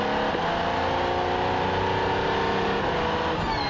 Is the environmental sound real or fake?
real